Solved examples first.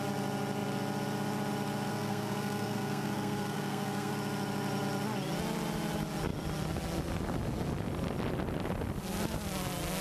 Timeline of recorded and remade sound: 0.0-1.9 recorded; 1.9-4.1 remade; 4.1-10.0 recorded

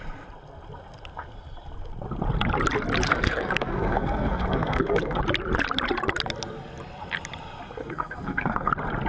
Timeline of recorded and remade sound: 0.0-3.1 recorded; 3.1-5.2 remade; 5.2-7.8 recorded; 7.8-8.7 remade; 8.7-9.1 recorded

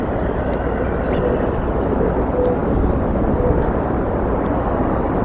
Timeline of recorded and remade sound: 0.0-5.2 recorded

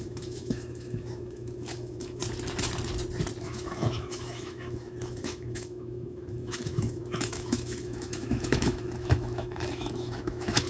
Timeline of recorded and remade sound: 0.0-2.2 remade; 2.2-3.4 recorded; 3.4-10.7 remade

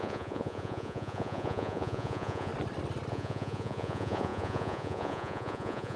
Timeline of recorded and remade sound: 0.0-2.5 remade; 2.5-3.1 recorded; 3.1-6.0 remade

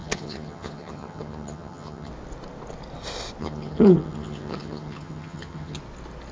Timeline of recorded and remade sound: 0.0-2.1 remade; 2.1-3.4 recorded; 3.4-5.8 remade; 5.8-6.3 recorded

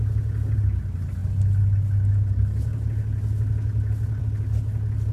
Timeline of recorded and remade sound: 0.0-5.1 recorded